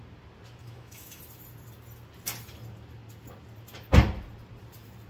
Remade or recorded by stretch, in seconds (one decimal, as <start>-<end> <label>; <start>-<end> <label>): 0.0-0.6 recorded; 0.6-1.2 remade; 1.2-5.1 recorded